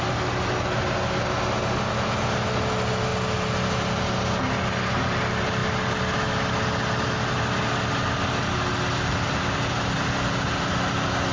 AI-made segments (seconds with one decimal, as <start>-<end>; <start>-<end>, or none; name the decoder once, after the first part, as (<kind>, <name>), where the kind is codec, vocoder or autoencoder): none